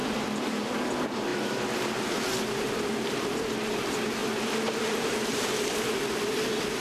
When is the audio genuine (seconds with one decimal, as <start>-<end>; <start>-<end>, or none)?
0.7-1.3; 2.1-4.2